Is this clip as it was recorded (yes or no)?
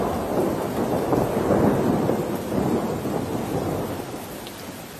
yes